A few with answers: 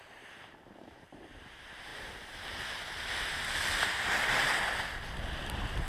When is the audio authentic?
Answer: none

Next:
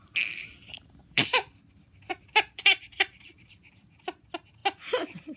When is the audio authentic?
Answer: 0.0-0.4; 1.5-2.1; 3.5-5.4